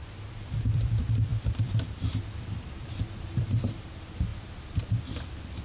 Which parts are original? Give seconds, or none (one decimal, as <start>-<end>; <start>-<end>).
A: 4.3-4.9